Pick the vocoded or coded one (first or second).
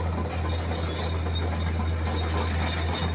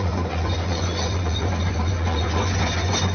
second